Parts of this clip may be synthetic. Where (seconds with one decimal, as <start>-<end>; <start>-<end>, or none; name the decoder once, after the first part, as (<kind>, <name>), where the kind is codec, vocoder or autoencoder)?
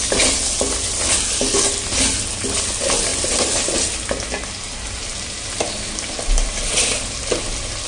none